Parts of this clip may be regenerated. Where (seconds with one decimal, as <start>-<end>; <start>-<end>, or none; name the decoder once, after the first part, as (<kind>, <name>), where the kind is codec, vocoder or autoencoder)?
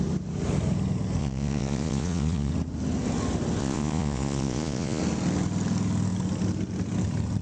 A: 1.2-2.5 (vocoder, Vocos); 3.6-5.0